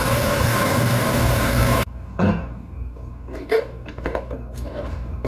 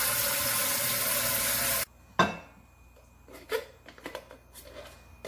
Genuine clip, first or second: second